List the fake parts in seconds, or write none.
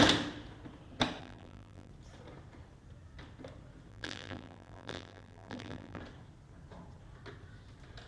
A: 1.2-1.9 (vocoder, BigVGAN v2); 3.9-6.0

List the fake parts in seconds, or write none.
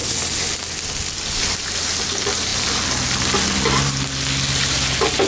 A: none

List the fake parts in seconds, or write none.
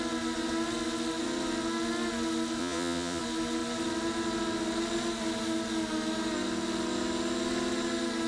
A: 2.6-3.2 (vocoder, Vocos)